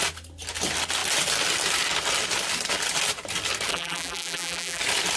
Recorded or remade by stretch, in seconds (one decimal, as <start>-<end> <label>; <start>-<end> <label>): 0.0-3.7 recorded; 3.7-4.8 remade; 4.8-5.2 recorded